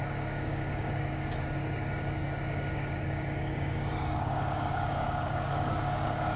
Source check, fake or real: fake